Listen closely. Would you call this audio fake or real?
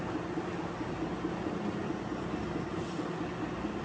real